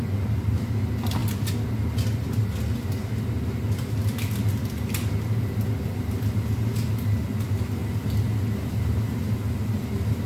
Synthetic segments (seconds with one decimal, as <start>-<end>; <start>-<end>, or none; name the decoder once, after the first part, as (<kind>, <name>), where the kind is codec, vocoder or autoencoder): none